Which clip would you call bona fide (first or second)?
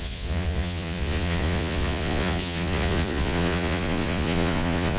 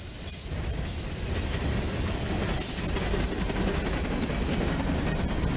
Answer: second